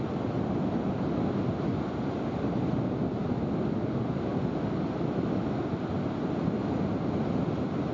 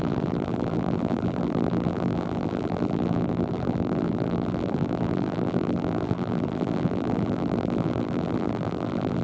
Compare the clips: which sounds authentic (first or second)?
first